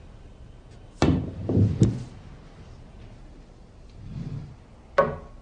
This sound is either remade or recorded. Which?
recorded